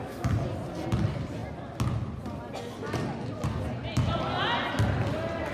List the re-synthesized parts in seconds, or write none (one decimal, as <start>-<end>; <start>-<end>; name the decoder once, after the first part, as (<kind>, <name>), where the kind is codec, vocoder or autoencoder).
none